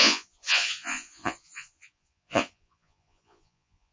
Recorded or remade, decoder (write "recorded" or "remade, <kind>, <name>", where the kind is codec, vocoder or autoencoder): remade, vocoder, Vocos